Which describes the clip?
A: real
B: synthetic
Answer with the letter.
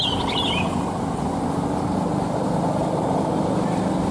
A